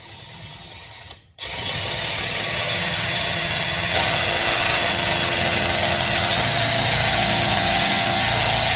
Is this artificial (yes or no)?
yes